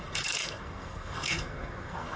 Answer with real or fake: fake